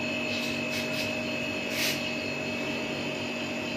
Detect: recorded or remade recorded